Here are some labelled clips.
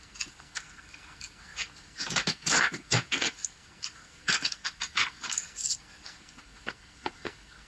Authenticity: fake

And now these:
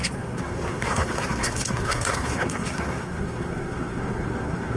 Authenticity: fake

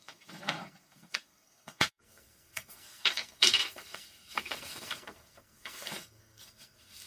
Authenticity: fake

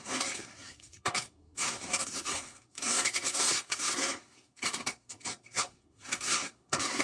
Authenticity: fake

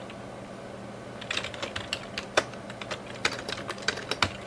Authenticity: real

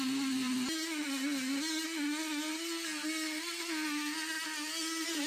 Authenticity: real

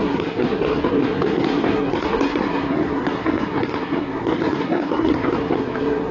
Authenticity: fake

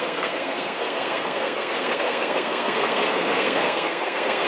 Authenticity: fake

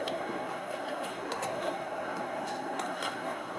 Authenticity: fake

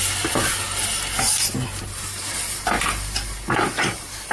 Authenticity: real